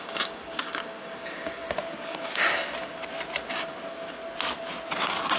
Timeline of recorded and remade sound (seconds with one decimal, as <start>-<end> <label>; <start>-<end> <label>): 0.0-3.0 remade; 3.0-3.5 recorded; 3.5-4.2 remade; 4.2-5.0 recorded; 5.0-5.4 remade